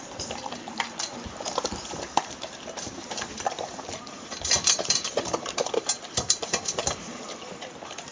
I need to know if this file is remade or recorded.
remade